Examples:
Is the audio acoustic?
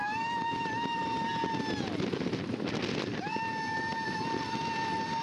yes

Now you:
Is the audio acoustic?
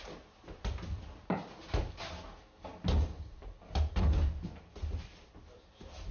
yes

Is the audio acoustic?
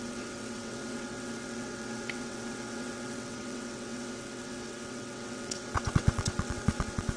no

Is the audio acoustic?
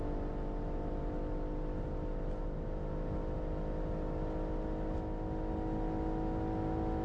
yes